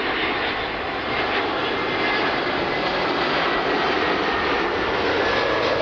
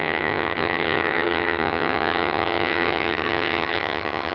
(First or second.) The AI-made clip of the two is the second